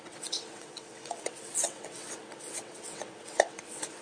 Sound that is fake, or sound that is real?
fake